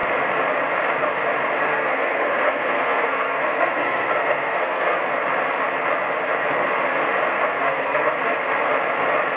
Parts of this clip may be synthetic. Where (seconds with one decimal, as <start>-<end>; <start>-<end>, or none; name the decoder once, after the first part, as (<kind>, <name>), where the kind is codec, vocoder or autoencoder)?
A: 1.7-5.0 (codec, SNAC); 7.3-8.2